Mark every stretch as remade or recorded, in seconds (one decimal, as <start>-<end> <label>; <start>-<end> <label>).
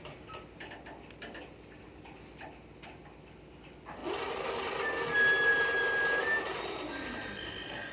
0.0-7.9 recorded